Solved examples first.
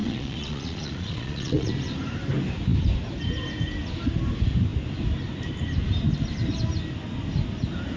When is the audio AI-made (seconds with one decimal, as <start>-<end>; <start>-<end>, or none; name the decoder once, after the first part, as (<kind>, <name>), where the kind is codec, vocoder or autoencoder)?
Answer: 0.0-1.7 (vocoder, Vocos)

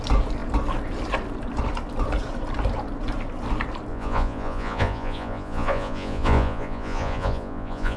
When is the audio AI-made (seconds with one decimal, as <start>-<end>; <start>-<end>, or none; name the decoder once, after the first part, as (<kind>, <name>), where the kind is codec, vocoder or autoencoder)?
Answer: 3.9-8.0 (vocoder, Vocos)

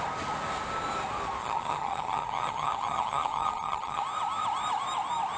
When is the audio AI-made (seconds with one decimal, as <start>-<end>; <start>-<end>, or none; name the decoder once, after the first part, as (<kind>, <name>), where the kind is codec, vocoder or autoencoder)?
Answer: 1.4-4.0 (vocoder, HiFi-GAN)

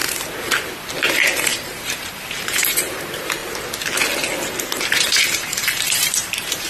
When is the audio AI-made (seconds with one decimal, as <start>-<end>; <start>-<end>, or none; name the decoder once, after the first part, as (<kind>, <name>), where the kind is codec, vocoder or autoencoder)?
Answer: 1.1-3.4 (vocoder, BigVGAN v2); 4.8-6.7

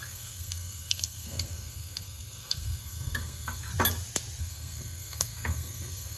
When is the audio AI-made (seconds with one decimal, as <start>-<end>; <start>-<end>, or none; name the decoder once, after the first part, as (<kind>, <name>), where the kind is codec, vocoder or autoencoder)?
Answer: 0.0-3.7 (codec, SNAC); 4.4-6.2